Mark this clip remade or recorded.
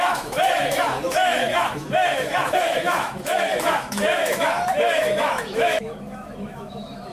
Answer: remade